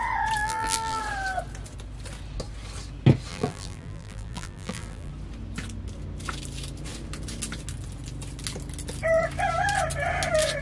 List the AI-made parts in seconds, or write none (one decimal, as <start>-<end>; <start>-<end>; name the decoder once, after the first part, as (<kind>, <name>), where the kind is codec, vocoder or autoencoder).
0.4-1.0 (vocoder, BigVGAN v2); 3.3-5.1